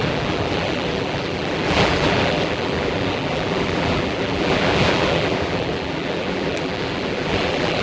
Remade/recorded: remade